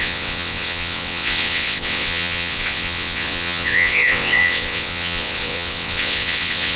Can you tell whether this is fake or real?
fake